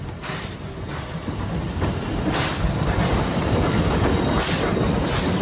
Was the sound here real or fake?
real